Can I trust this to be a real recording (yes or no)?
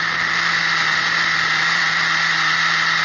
yes